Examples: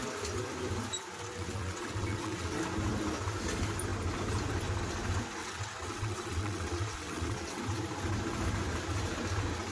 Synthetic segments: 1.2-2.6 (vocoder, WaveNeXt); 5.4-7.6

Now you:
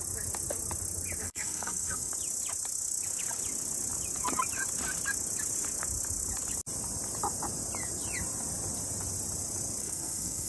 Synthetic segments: 1.2-2.1 (codec, SNAC); 9.8-10.5

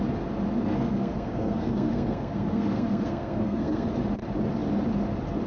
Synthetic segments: 0.6-3.9 (codec, SNAC)

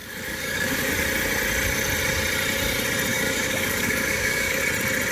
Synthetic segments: 0.0-0.9 (codec, DAC); 3.1-4.6

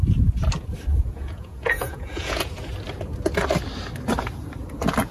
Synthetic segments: 0.9-2.5 (vocoder, Vocos)